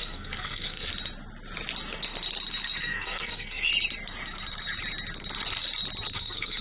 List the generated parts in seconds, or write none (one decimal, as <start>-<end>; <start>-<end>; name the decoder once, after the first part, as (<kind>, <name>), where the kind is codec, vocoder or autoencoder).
0.0-0.9 (codec, SNAC); 2.8-3.7; 6.1-6.6